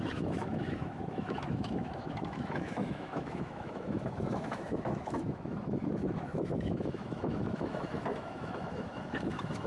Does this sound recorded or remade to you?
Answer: remade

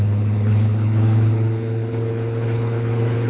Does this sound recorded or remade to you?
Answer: remade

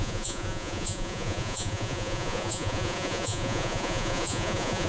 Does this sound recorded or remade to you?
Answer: remade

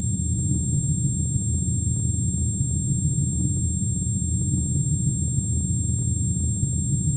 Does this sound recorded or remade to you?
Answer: recorded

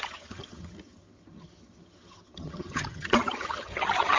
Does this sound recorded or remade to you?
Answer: remade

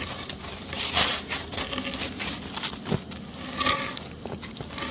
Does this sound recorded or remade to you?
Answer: recorded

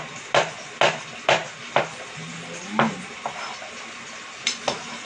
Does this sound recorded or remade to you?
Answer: recorded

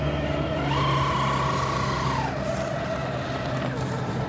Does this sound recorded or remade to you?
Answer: recorded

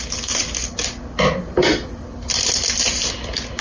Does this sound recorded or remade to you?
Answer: recorded